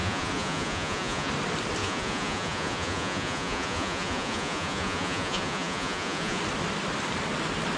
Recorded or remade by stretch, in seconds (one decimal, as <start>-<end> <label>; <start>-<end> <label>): 0.0-1.3 remade; 1.3-1.8 recorded; 1.8-6.4 remade; 6.4-7.8 recorded